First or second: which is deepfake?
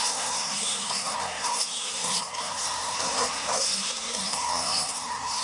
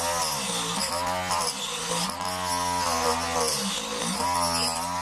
first